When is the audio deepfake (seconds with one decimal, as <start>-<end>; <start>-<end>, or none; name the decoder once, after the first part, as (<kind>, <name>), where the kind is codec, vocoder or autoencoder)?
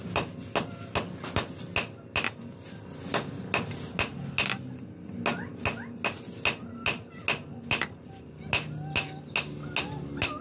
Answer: none